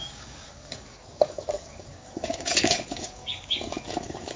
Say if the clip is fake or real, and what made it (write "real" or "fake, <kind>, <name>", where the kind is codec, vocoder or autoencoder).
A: fake, codec, DAC